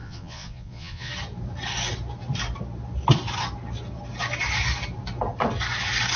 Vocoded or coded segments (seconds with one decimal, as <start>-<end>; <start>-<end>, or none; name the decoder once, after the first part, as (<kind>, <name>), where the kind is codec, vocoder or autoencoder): 0.0-1.1 (vocoder, Vocos)